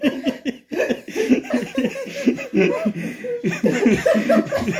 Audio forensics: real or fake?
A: real